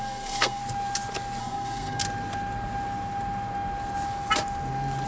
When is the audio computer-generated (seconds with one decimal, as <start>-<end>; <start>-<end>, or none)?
0.0-0.6; 1.4-2.0